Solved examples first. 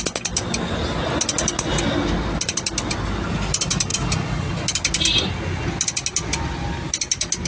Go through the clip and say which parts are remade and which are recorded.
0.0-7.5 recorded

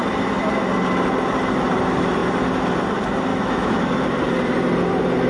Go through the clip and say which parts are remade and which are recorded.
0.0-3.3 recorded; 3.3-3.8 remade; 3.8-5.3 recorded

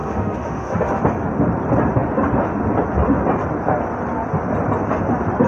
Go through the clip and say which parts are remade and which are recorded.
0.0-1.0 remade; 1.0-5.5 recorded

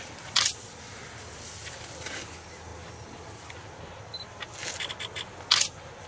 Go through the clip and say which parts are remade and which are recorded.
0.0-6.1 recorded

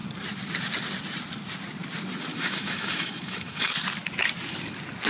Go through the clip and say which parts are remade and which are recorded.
0.0-2.3 recorded; 2.3-3.7 remade; 3.7-5.1 recorded

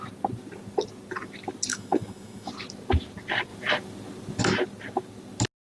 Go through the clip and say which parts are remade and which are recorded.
0.0-1.7 recorded; 1.7-2.5 remade; 2.5-5.7 recorded

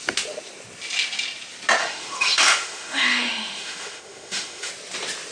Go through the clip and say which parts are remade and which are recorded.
0.0-1.8 recorded; 1.8-4.7 remade; 4.7-5.3 recorded